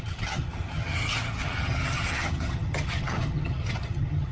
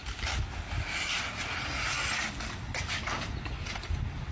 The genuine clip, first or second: second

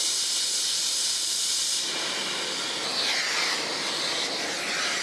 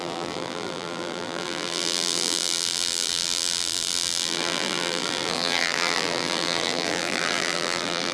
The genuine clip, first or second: first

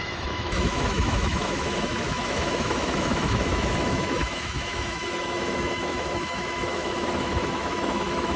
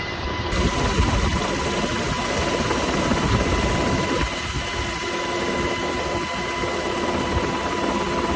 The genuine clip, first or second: second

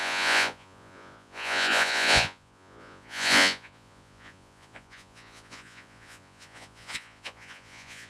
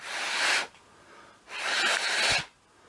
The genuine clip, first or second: second